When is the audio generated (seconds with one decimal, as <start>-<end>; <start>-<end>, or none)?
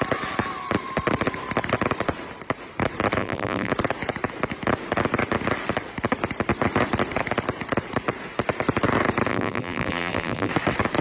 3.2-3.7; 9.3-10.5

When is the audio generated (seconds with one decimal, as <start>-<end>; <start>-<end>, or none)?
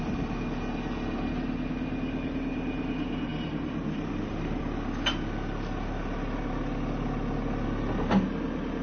3.3-4.6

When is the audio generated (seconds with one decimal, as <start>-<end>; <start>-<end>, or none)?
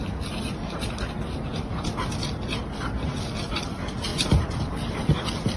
4.1-5.1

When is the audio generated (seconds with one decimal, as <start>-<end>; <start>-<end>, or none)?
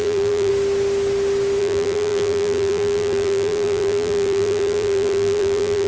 0.0-0.5; 1.6-5.9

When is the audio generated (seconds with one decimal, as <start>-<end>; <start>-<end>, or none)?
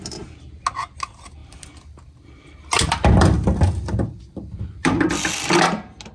1.4-5.1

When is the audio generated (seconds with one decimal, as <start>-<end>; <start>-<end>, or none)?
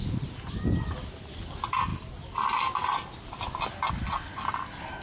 0.0-0.5; 1.9-3.9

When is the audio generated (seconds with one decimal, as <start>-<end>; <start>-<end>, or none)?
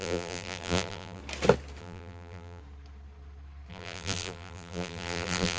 0.0-1.2; 1.8-2.6; 3.7-5.6